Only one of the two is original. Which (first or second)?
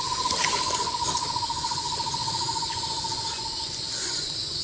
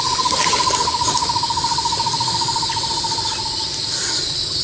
second